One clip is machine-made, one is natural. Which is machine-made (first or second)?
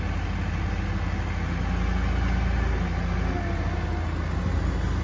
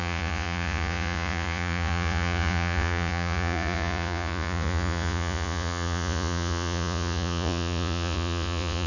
second